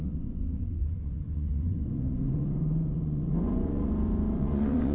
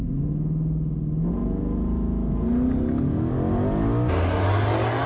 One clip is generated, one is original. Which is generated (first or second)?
first